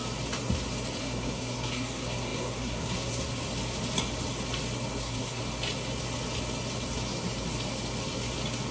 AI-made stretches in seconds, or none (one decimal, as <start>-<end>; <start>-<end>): 1.0-3.3; 5.0-5.4